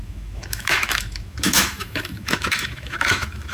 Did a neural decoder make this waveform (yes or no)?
yes